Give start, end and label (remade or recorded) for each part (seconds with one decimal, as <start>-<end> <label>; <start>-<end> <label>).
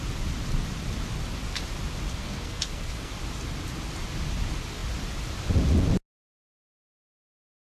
0.0-2.1 recorded; 2.1-3.1 remade; 3.1-7.6 recorded